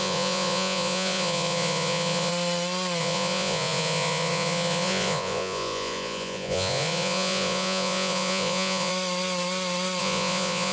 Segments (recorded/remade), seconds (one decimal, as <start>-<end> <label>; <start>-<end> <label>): 0.0-2.3 remade; 2.3-3.0 recorded; 3.0-8.9 remade; 8.9-10.0 recorded; 10.0-10.7 remade

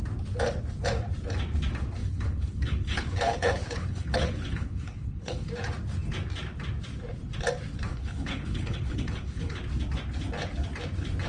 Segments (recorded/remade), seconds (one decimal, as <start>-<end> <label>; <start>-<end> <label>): 0.0-2.0 recorded; 2.0-5.5 remade; 5.5-7.9 recorded; 7.9-9.6 remade; 9.6-11.3 recorded

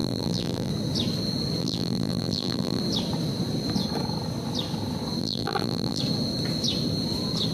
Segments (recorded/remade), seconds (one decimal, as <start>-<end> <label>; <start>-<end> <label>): 0.0-0.7 remade; 0.7-1.6 recorded; 1.6-2.8 remade; 2.8-5.2 recorded; 5.2-6.0 remade; 6.0-7.5 recorded

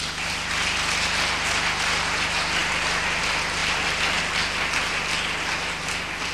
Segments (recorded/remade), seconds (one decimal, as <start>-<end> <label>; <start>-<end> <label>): 0.0-6.3 recorded